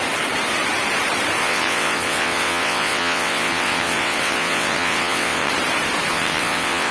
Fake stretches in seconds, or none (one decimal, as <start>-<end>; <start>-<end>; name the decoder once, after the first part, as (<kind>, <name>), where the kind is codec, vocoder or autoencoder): 1.4-5.5 (vocoder, WaveNeXt); 6.1-6.9